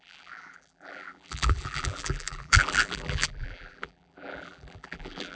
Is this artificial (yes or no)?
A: yes